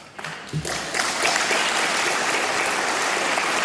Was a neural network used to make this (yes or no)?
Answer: no